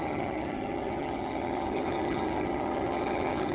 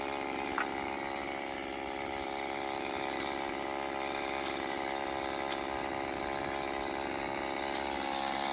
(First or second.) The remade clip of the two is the first